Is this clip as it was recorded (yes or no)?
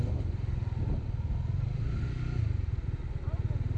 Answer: yes